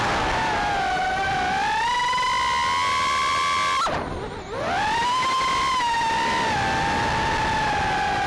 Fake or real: real